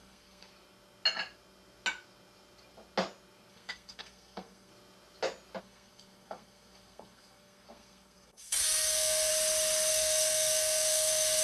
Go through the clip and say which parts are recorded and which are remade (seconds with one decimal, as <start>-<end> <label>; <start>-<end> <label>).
0.0-0.5 remade; 0.5-3.5 recorded; 3.5-4.7 remade; 4.7-5.6 recorded; 5.6-9.3 remade; 9.3-9.9 recorded; 9.9-11.4 remade